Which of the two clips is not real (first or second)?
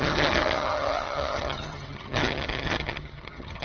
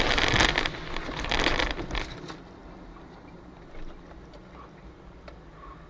first